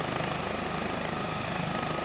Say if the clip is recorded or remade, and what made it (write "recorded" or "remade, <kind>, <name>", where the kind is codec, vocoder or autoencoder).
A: recorded